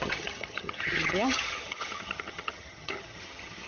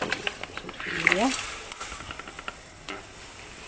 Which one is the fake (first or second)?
first